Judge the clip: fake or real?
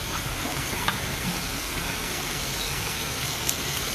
fake